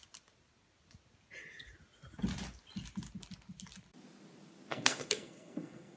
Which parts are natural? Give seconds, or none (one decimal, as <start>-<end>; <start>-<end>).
0.0-4.7